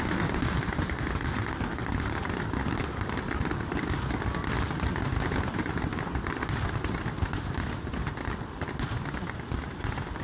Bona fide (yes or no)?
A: yes